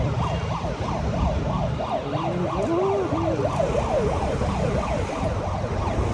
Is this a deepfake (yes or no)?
no